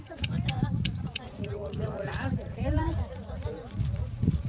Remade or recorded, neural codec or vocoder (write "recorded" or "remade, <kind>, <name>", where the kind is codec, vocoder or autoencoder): remade, vocoder, Vocos